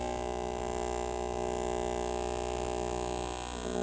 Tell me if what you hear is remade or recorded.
recorded